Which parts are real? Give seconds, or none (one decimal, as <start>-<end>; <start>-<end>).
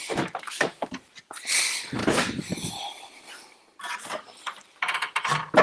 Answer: 0.9-5.6